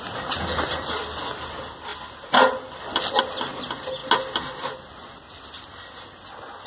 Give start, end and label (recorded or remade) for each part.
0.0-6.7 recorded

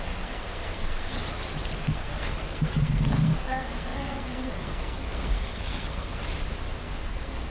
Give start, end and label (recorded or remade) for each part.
0.0-1.2 remade; 1.2-1.8 recorded; 1.8-6.2 remade; 6.2-6.8 recorded; 6.8-7.5 remade

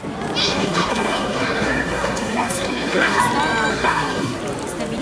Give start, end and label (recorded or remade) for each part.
0.0-0.4 recorded; 0.4-3.2 remade; 3.2-3.7 recorded; 3.7-4.4 remade; 4.4-5.0 recorded

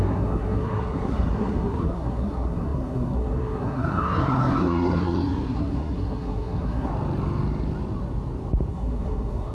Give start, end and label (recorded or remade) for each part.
0.0-6.9 remade; 6.9-8.7 recorded; 8.7-9.5 remade